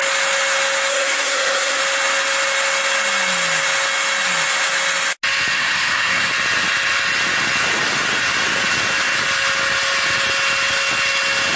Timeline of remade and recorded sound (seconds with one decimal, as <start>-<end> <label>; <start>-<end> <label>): 0.0-0.9 recorded; 0.9-1.8 remade; 1.8-5.5 recorded; 5.5-6.3 remade; 6.3-11.6 recorded